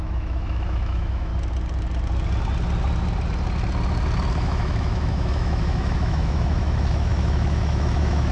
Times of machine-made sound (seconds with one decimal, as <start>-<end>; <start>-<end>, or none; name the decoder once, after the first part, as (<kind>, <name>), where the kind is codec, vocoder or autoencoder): 0.0-1.3 (autoencoder, DAC-VAE); 4.3-8.3